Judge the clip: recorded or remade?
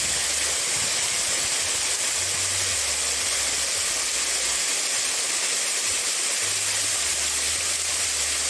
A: recorded